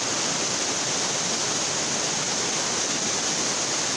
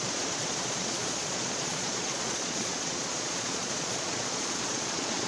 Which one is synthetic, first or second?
second